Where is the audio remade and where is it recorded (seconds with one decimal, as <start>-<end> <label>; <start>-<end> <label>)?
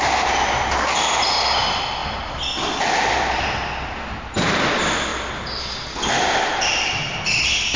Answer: 0.0-7.8 recorded